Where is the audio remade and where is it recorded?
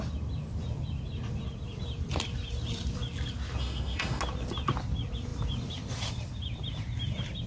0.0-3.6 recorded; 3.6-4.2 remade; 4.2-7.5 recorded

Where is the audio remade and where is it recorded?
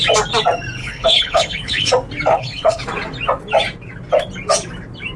0.0-0.8 recorded; 0.8-1.9 remade; 1.9-2.3 recorded; 2.3-2.8 remade; 2.8-5.2 recorded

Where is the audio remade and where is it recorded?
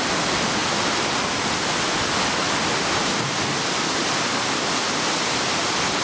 0.0-6.0 recorded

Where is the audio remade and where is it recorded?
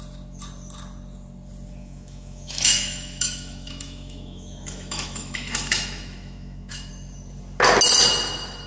0.0-1.8 recorded; 1.8-6.9 remade; 6.9-8.7 recorded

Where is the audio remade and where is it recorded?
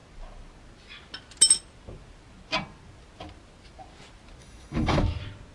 0.0-4.4 recorded; 4.4-5.0 remade; 5.0-5.5 recorded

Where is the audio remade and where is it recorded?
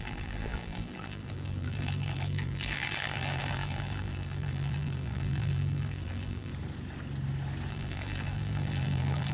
0.0-6.5 remade; 6.5-7.7 recorded; 7.7-9.3 remade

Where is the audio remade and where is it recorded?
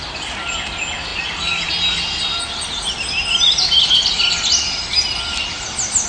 0.0-6.1 recorded